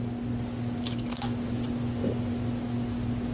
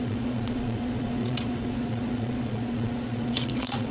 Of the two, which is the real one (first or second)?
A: first